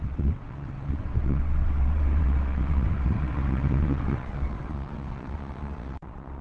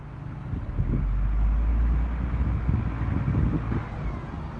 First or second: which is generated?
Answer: first